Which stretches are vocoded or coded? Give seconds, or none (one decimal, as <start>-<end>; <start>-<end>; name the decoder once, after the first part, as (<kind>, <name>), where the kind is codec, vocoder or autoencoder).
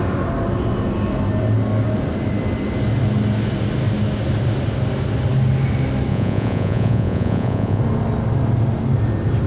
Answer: 6.1-7.8 (vocoder, Vocos)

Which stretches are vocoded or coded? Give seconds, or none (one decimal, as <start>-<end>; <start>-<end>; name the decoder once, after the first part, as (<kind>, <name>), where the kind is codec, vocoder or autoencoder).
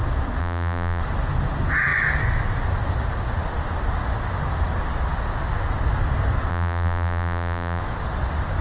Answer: 0.4-1.0 (vocoder, BigVGAN v2); 6.5-7.8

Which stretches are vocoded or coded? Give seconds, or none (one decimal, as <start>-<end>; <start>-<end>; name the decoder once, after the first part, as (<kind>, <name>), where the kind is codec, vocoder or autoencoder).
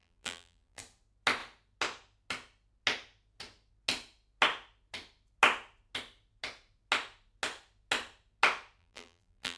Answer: 0.0-0.8 (vocoder, BigVGAN v2); 8.8-9.6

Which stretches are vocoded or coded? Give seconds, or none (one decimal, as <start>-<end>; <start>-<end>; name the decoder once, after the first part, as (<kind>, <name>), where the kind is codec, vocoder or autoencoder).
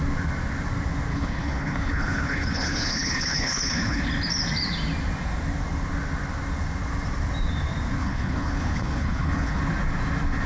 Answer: 1.1-4.0 (codec, HILCodec); 8.0-9.6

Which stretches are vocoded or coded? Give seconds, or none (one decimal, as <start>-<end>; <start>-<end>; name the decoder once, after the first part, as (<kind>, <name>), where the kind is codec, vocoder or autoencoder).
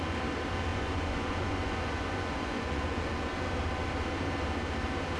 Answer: 0.7-3.3 (vocoder, Vocos)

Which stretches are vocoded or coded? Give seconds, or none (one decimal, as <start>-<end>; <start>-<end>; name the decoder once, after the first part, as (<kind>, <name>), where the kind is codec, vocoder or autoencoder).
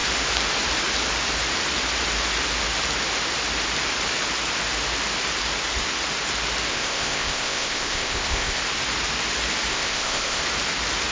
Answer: 6.7-8.6 (codec, ZipCodec); 9.7-10.4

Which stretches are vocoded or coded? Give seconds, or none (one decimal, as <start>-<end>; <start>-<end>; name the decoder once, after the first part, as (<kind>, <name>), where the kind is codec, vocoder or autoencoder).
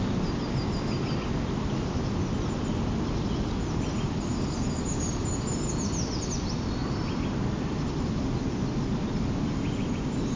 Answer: none